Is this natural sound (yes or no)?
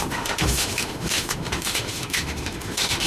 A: no